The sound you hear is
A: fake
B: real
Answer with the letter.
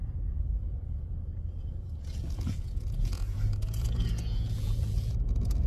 A